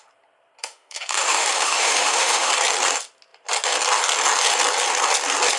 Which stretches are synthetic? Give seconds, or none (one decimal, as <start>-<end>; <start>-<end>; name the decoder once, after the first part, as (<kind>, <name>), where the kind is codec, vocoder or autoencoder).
0.6-2.5 (autoencoder, DAC-VAE)